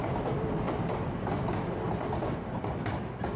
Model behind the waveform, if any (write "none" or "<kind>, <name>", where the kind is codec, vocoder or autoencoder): none